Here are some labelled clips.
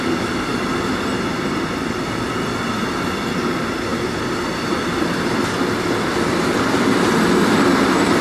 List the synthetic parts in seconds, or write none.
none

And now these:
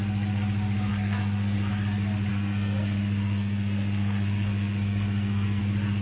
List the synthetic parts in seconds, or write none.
0.9-1.7 (codec, SNAC); 2.3-5.6

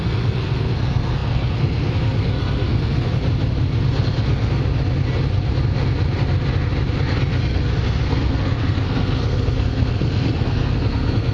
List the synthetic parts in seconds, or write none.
0.0-3.2 (codec, SNAC); 3.9-4.6; 7.4-11.3